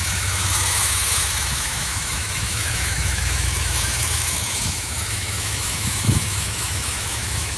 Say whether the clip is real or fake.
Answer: fake